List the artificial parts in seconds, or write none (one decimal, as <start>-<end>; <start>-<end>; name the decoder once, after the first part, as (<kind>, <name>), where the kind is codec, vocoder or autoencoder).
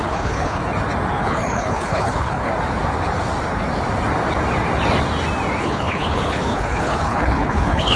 0.0-0.6 (codec, HILCodec); 1.2-2.5; 5.6-8.0